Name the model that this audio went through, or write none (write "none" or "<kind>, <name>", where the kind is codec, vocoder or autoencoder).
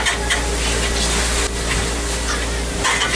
none